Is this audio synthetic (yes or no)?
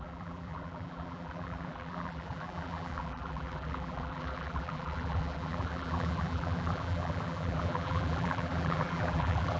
yes